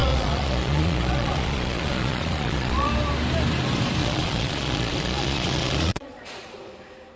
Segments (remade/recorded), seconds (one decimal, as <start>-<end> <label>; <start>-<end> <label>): 0.0-2.9 remade; 2.9-4.0 recorded; 4.0-6.7 remade; 6.7-7.2 recorded